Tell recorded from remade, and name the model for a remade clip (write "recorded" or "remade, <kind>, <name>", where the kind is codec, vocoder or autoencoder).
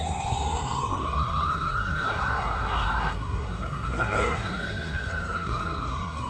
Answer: remade, codec, SNAC